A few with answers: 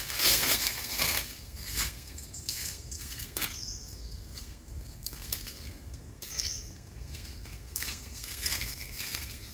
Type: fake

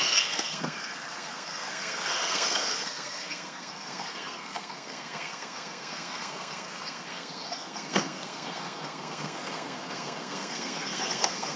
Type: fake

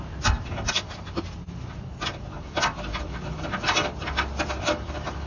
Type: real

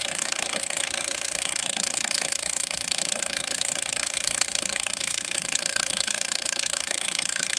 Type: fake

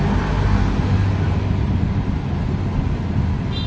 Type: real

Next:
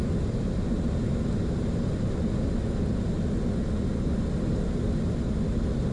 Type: real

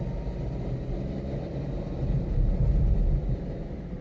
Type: real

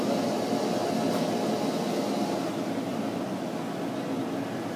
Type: real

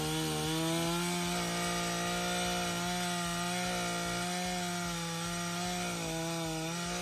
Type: real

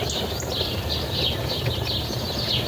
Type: real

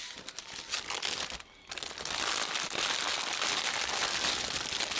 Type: real